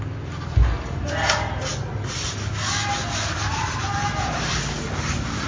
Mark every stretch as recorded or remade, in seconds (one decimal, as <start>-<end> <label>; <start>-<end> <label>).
0.0-5.5 recorded